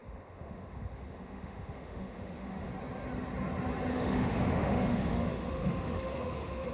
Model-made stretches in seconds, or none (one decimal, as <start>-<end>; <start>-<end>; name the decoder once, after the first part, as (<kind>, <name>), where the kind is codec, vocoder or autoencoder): 0.0-2.7 (autoencoder, DAC-VAE); 3.9-6.7